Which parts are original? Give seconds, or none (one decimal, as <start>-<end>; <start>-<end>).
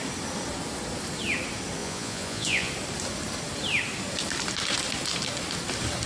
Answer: 0.0-1.8; 2.7-6.1